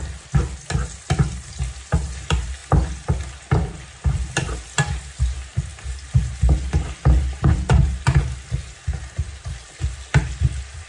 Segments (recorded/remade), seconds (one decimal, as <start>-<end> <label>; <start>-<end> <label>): 0.0-10.9 recorded